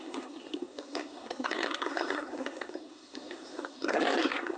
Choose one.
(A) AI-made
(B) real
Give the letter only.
A